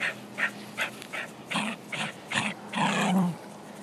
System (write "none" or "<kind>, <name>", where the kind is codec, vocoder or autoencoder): none